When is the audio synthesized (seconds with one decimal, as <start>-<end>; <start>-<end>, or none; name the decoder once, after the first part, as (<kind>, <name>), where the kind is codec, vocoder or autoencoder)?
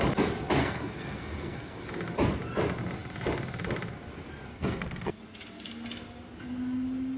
0.6-1.8 (codec, SNAC); 4.5-5.2